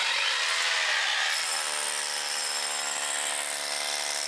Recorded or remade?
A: recorded